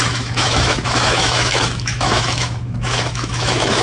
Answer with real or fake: fake